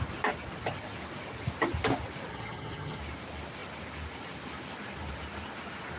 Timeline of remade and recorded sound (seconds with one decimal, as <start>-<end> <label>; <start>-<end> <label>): 0.0-2.3 recorded; 2.3-3.0 remade; 3.0-6.0 recorded